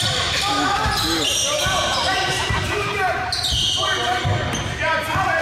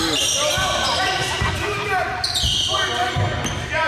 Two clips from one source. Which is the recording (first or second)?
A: second